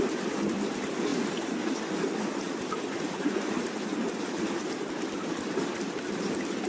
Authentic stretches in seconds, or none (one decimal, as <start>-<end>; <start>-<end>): 0.0-6.7